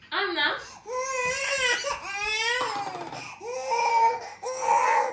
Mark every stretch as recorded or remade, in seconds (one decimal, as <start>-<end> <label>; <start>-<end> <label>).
0.0-3.9 recorded; 3.9-5.1 remade